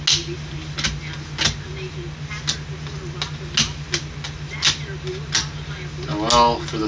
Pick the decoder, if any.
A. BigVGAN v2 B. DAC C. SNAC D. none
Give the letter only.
D